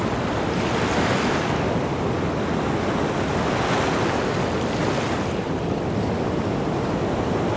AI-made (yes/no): no